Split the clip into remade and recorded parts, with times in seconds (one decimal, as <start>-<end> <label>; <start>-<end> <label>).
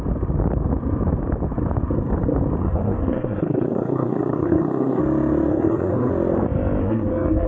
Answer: 0.0-2.6 recorded; 2.6-5.0 remade; 5.0-5.5 recorded; 5.5-6.1 remade; 6.1-6.8 recorded; 6.8-7.5 remade